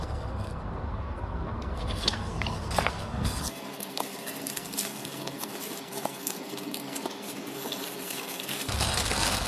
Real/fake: fake